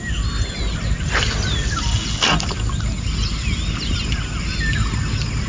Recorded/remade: recorded